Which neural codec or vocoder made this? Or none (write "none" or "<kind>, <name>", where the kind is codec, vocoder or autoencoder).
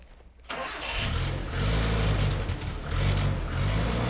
none